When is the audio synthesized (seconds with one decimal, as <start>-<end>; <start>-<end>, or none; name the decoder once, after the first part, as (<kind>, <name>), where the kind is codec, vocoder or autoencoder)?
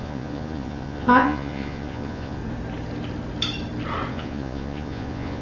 0.0-2.4 (vocoder, Vocos); 4.1-5.4